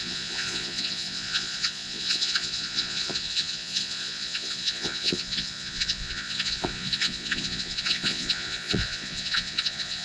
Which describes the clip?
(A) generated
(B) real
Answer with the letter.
A